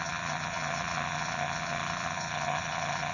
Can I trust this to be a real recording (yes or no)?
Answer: no